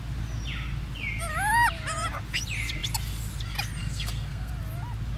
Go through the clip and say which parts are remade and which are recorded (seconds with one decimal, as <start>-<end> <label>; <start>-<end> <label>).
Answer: 0.0-3.8 recorded; 3.8-4.5 remade; 4.5-5.2 recorded